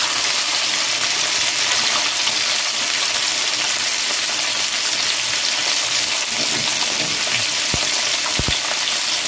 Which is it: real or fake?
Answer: real